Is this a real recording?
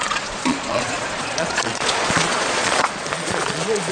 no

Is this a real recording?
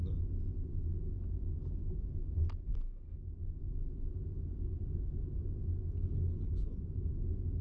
yes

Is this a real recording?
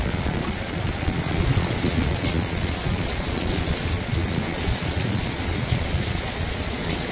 no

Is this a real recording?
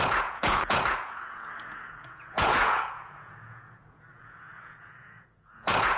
no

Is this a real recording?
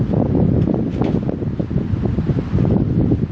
yes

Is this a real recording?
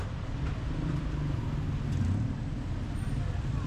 yes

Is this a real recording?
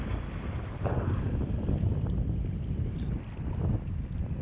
yes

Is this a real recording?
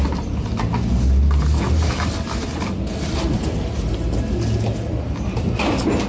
yes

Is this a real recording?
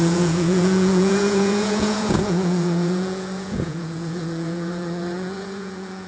no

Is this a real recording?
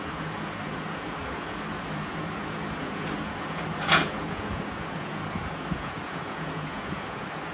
no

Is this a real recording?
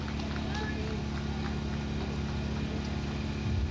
yes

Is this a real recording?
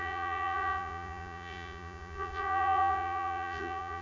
no